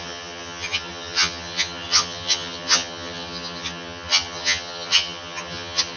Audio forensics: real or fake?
fake